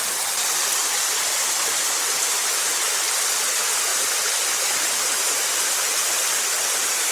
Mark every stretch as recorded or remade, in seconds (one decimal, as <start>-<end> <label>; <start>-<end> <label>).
0.0-7.1 recorded